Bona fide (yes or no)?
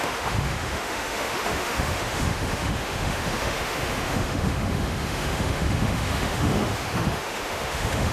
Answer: no